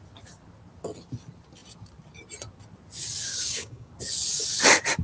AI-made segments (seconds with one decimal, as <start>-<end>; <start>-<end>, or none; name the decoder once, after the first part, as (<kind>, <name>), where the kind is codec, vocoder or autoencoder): 3.3-3.9 (codec, DAC)